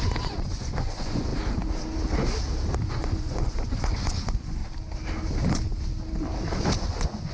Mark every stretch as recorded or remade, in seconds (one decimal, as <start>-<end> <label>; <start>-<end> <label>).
0.0-1.3 remade; 1.3-2.9 recorded; 2.9-4.6 remade; 4.6-6.8 recorded; 6.8-7.3 remade